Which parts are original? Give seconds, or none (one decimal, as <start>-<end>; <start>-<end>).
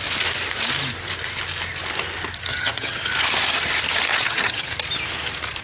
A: 0.0-2.5; 3.1-4.1; 4.7-5.6